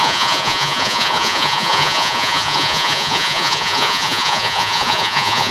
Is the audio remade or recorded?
remade